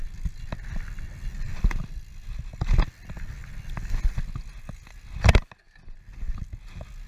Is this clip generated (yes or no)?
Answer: no